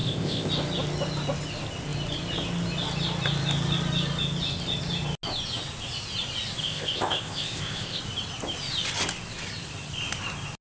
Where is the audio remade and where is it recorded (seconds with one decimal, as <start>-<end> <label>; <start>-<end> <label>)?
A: 0.0-0.5 remade; 0.5-6.6 recorded; 6.6-8.0 remade; 8.0-10.6 recorded